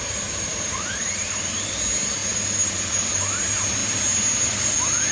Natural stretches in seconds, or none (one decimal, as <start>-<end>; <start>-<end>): 0.0-0.5; 1.3-2.2; 3.2-5.1